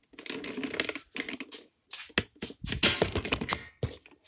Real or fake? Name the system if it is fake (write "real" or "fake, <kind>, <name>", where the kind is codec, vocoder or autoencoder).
real